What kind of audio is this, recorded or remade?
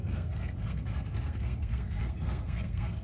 remade